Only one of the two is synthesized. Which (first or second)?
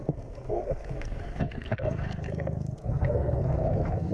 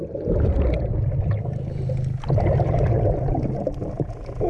first